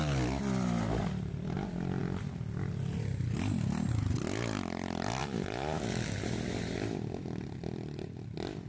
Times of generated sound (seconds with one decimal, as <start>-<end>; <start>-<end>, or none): none